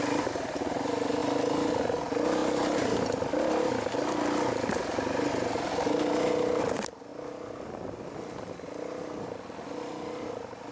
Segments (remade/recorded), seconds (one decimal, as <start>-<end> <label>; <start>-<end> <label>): 0.0-10.7 recorded